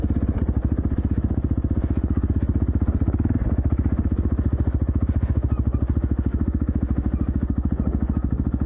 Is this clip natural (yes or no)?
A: yes